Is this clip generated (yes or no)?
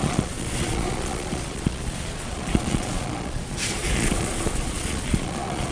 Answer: yes